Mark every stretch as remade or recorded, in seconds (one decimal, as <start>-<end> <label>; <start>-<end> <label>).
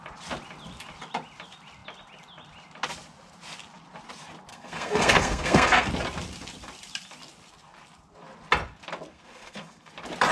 0.0-4.5 recorded; 4.5-5.9 remade; 5.9-9.1 recorded; 9.1-9.9 remade; 9.9-10.3 recorded